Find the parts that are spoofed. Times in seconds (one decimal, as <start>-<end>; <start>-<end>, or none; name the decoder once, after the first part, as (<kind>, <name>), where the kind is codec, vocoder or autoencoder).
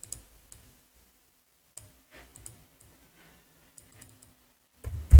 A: 2.3-5.2 (vocoder, BigVGAN v2)